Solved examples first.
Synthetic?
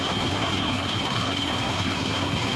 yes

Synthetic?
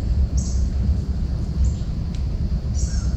no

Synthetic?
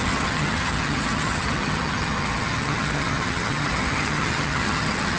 yes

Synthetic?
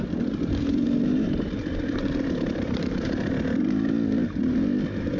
yes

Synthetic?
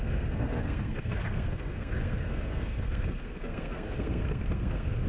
yes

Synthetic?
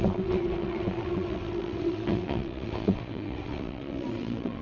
yes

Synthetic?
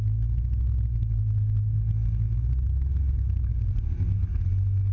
no